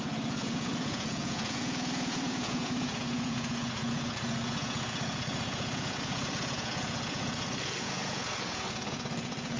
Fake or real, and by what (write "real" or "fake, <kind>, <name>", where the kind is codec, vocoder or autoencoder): fake, vocoder, Vocos